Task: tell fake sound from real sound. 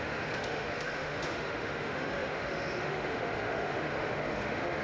fake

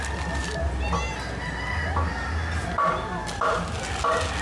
real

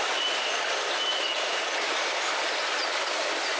real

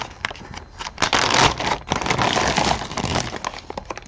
real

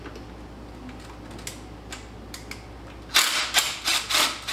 real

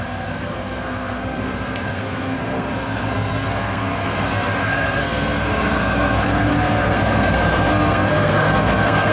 fake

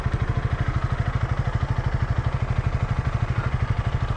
real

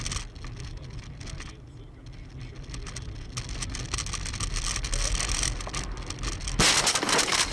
real